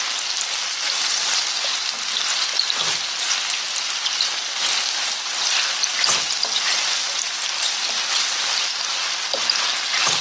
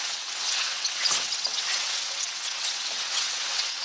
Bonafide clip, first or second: first